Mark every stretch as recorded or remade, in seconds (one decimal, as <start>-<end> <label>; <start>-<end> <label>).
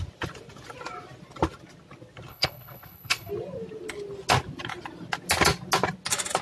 0.0-2.3 recorded; 2.3-3.3 remade; 3.3-6.4 recorded